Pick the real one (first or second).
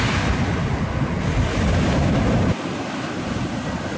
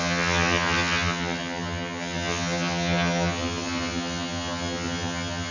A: first